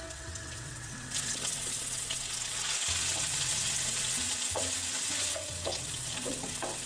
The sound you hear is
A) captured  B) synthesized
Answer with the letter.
B